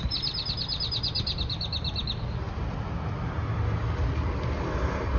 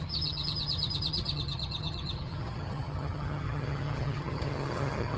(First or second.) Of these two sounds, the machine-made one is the second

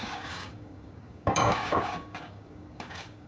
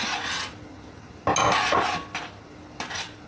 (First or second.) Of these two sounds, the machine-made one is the first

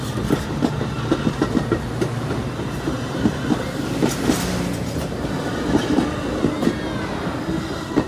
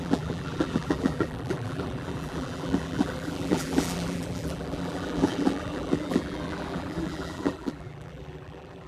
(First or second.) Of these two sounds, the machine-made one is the second